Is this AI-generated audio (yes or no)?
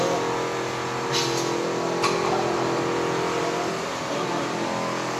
no